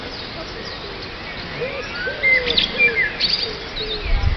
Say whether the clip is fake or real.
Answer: real